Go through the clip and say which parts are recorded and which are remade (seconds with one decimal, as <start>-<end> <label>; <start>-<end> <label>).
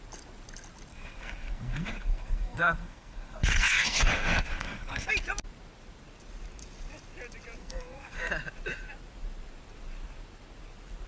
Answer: 0.0-0.9 recorded; 0.9-5.1 remade; 5.1-7.6 recorded; 7.6-8.3 remade; 8.3-11.1 recorded